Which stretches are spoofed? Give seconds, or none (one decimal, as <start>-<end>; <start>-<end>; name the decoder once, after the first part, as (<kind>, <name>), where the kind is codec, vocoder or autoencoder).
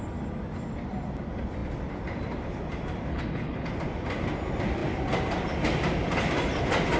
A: 3.1-3.7 (codec, HILCodec)